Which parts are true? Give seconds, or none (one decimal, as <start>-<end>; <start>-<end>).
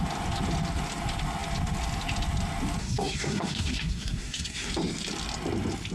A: 0.0-2.8; 4.7-5.9